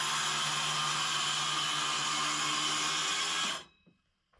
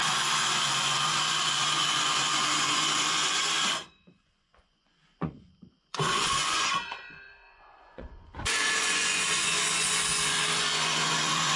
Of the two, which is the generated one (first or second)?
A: second